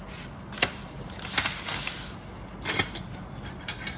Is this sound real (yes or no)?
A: yes